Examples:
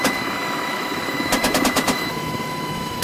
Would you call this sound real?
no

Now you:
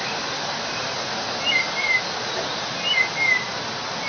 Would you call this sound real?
yes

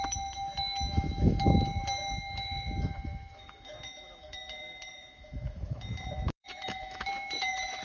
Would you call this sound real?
no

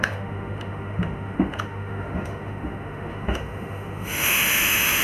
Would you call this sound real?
no